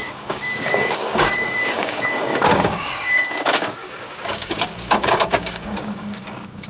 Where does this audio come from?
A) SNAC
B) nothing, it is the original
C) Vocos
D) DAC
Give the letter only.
D